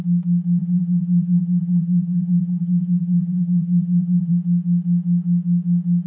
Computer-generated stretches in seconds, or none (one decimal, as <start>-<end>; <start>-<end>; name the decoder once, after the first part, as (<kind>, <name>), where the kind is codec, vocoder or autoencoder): 0.6-4.3 (vocoder, BigVGAN v2)